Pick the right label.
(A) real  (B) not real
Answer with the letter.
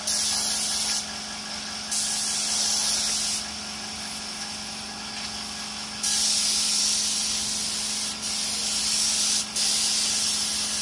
A